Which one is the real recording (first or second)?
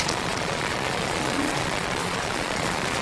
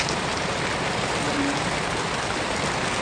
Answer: second